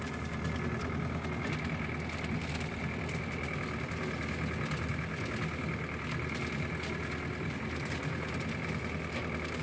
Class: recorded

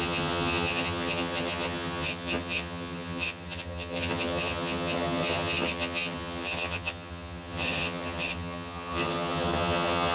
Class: remade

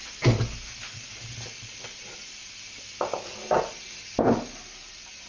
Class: recorded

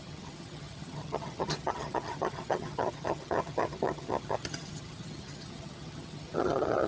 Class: remade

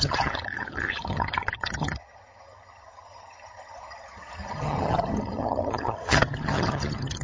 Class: remade